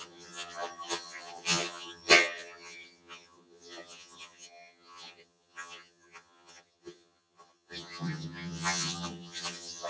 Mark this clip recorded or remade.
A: remade